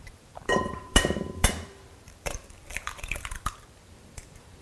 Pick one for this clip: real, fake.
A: fake